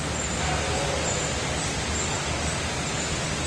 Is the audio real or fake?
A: real